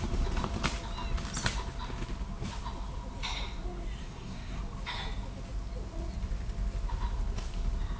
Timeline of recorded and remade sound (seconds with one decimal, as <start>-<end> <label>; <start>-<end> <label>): 0.0-4.0 recorded; 4.0-4.6 remade; 4.6-8.0 recorded